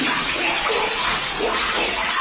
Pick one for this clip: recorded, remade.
remade